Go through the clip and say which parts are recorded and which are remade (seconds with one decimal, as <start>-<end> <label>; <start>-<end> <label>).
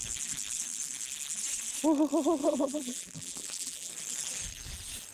0.0-2.4 recorded; 2.4-3.9 remade; 3.9-5.1 recorded